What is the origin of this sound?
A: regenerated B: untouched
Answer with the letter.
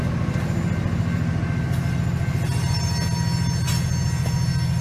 B